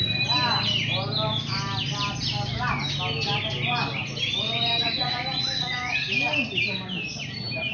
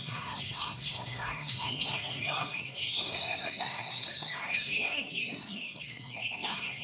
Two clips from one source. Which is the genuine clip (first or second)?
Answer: first